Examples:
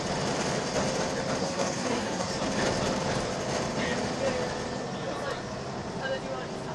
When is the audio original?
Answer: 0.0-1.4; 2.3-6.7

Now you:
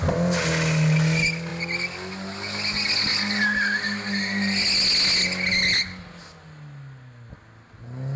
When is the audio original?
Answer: 0.0-8.2

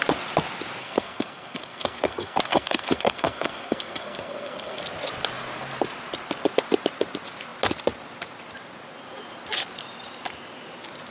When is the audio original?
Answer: 0.0-0.8; 4.8-11.1

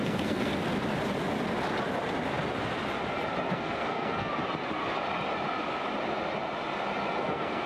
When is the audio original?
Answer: 0.5-3.5; 4.3-7.2

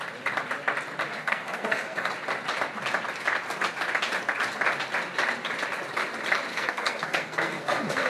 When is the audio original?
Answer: 0.0-1.2; 2.1-6.5

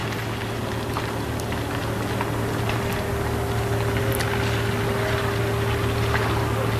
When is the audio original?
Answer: 0.0-6.8

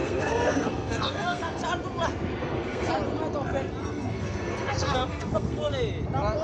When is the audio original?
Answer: 1.6-2.4; 2.9-3.8; 5.7-6.4

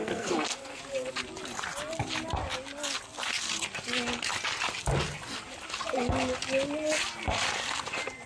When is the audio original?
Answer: 0.8-8.3